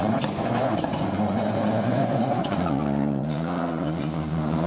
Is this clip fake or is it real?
fake